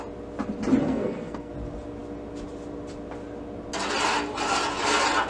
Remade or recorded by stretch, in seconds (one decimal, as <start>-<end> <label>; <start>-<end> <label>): 0.0-0.8 recorded; 0.8-1.5 remade; 1.5-5.3 recorded